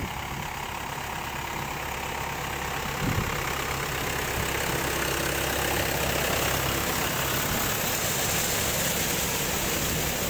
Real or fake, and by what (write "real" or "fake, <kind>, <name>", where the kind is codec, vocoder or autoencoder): real